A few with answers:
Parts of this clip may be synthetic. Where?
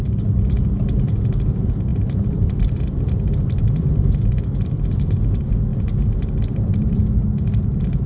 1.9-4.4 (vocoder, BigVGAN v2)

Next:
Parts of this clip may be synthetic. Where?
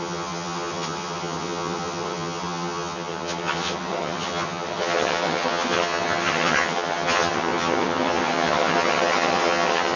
0.0-10.0 (vocoder, HiFi-GAN)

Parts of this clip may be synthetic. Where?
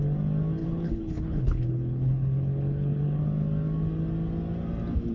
0.6-3.2 (codec, HILCodec)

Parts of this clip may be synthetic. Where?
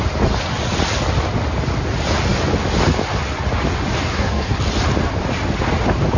4.1-4.6 (codec, SNAC)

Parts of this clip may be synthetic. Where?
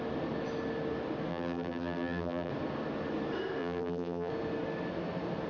1.3-2.5 (vocoder, BigVGAN v2); 3.6-4.3